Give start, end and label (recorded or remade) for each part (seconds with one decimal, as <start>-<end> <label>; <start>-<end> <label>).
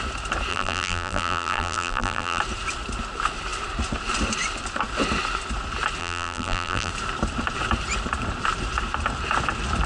0.0-0.5 recorded; 0.5-2.4 remade; 2.4-6.0 recorded; 6.0-6.9 remade; 6.9-9.9 recorded